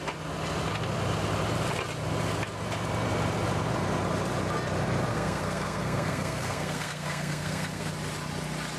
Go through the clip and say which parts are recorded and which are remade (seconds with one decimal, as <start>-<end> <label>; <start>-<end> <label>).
0.0-5.1 recorded; 5.1-7.9 remade; 7.9-8.8 recorded

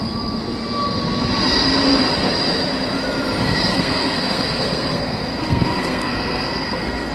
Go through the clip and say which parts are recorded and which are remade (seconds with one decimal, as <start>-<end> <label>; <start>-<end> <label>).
0.0-3.7 recorded; 3.7-7.1 remade

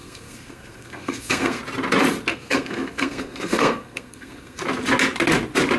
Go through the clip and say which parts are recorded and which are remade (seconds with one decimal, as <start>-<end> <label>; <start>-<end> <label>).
0.0-1.6 remade; 1.6-2.3 recorded; 2.3-4.6 remade; 4.6-5.8 recorded

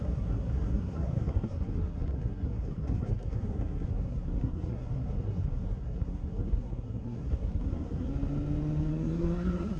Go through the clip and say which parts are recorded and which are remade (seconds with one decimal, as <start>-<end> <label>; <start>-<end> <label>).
0.0-8.1 remade; 8.1-8.9 recorded; 8.9-9.8 remade

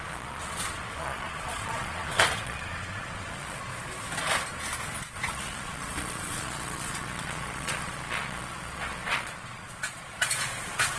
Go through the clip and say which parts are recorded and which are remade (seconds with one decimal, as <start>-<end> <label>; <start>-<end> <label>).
0.0-3.7 remade; 3.7-5.0 recorded; 5.0-11.0 remade

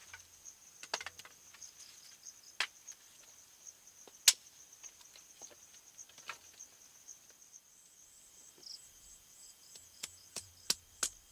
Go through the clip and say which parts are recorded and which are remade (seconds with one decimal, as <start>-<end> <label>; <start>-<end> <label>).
0.0-8.7 recorded; 8.7-10.5 remade; 10.5-11.3 recorded

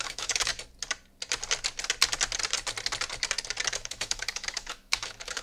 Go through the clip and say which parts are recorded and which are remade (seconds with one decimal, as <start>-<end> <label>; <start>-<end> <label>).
0.0-0.5 remade; 0.5-3.7 recorded; 3.7-5.4 remade

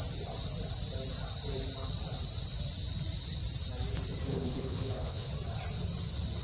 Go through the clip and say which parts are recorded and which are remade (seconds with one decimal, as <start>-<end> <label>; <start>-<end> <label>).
0.0-4.3 recorded; 4.3-5.3 remade; 5.3-6.4 recorded